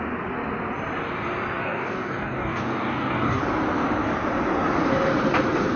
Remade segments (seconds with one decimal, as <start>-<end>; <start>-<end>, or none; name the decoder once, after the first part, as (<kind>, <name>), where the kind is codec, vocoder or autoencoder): 1.6-3.4 (codec, DAC)